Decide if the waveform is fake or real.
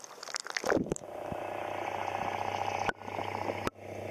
real